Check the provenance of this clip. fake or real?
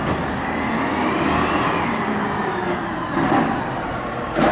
real